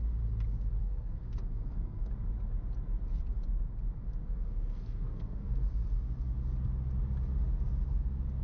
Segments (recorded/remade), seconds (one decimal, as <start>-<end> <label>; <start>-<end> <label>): 0.0-0.8 recorded; 0.8-2.1 remade; 2.1-4.2 recorded; 4.2-5.7 remade; 5.7-8.4 recorded